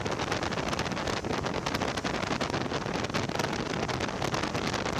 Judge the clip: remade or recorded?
recorded